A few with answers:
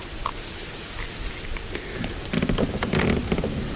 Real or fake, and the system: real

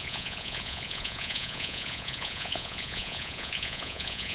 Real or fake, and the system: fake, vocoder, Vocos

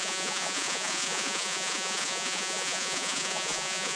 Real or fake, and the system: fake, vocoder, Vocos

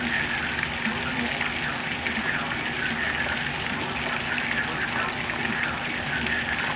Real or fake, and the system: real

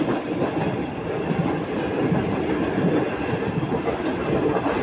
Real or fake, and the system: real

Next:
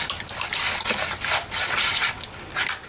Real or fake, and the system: real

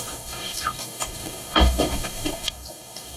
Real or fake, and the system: fake, codec, DAC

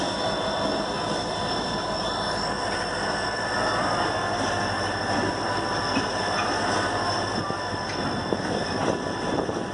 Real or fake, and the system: real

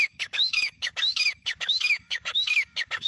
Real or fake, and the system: fake, codec, DAC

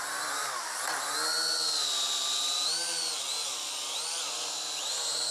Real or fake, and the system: real